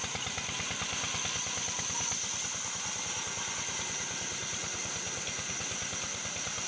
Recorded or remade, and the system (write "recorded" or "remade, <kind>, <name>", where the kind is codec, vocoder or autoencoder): recorded